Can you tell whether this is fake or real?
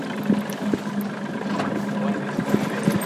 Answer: real